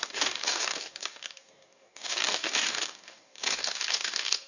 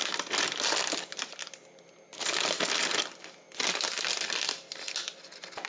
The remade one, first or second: first